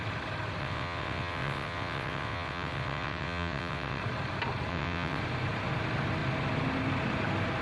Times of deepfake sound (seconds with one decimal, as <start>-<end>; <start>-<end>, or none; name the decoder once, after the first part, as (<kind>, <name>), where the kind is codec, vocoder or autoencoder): 0.6-4.0 (vocoder, WaveNeXt); 4.7-5.2